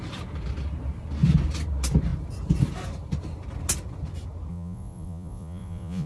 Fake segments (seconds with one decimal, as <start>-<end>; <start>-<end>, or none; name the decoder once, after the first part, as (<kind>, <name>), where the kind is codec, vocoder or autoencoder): 4.5-6.1 (vocoder, Vocos)